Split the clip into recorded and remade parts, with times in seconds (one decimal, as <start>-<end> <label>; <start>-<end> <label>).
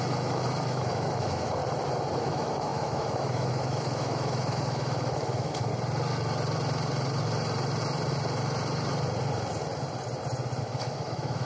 0.0-1.6 remade; 1.6-2.2 recorded; 2.2-5.7 remade; 5.7-10.6 recorded; 10.6-11.4 remade